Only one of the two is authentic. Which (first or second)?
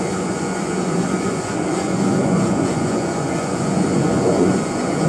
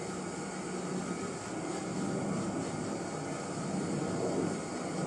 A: second